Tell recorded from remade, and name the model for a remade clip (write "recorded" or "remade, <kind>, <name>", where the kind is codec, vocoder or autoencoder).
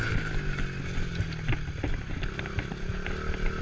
recorded